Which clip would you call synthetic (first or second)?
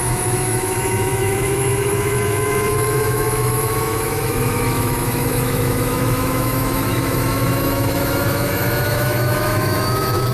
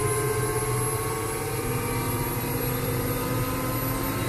first